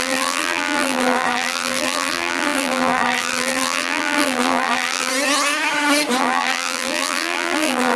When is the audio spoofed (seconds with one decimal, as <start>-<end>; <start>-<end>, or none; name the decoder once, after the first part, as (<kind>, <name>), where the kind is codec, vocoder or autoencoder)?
0.0-5.1 (vocoder, BigVGAN v2); 6.2-8.0